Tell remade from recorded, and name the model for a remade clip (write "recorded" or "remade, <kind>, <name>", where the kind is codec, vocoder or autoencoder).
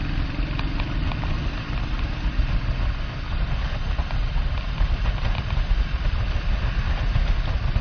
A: recorded